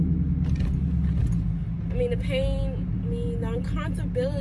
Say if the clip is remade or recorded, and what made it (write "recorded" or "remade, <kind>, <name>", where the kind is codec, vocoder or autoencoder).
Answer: recorded